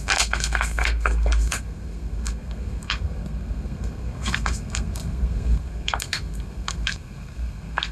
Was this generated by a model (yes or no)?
yes